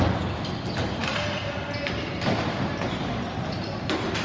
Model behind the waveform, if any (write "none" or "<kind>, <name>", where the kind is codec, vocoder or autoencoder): none